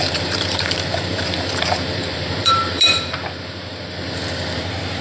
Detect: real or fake fake